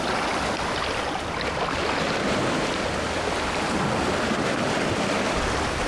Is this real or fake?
real